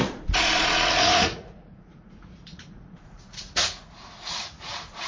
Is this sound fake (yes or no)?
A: yes